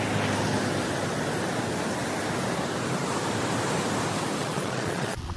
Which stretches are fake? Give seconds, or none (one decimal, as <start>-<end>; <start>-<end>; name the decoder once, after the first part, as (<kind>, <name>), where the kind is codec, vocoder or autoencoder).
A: 4.4-5.4 (vocoder, Vocos)